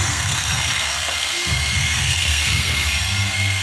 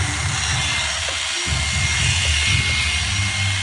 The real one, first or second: second